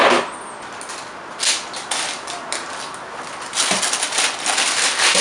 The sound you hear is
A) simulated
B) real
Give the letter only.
B